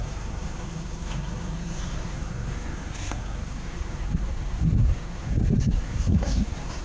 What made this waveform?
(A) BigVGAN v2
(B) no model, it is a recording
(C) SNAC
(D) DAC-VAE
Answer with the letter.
C